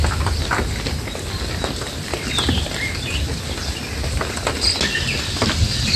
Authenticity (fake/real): real